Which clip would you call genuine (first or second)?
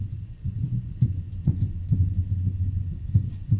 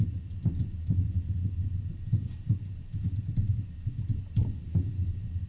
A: second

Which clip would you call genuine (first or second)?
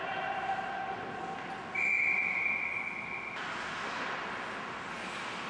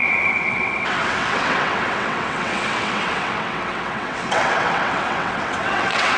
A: first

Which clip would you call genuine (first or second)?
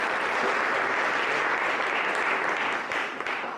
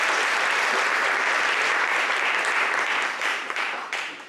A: first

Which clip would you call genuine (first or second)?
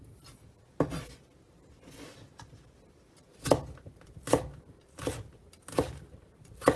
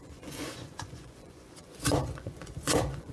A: first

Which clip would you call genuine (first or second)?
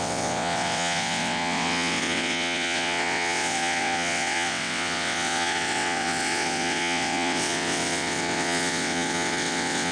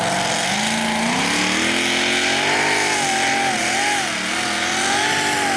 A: second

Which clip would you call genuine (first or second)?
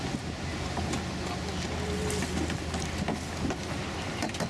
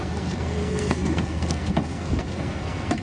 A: first